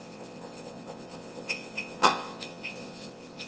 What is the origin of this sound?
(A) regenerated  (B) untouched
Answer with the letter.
A